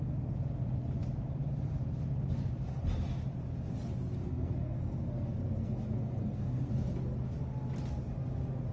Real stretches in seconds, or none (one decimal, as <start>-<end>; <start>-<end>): 0.0-4.2; 6.7-8.7